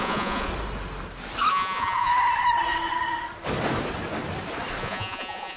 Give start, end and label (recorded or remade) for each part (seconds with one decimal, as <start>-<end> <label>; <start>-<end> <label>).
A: 0.0-0.5 remade; 0.5-1.5 recorded; 1.5-2.1 remade; 2.1-4.8 recorded; 4.8-5.6 remade